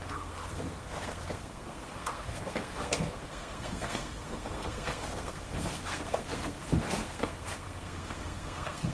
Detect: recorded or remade remade